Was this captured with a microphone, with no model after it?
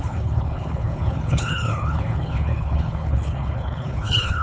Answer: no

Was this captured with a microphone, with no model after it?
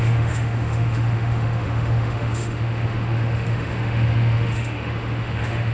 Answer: no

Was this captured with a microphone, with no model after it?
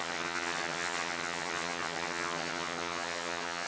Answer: no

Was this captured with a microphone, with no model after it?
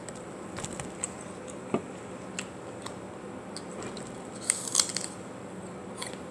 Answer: yes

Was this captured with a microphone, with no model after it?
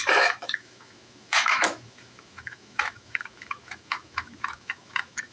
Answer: no